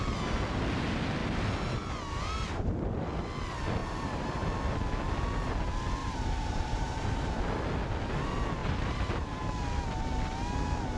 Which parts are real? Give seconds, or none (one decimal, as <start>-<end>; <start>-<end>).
0.0-3.8; 4.7-6.0; 7.4-8.6; 9.6-11.0